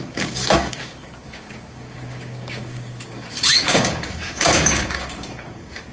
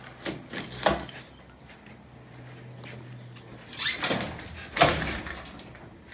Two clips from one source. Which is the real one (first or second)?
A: second